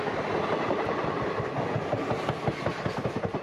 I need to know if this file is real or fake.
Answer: real